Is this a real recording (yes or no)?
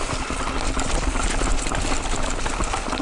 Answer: yes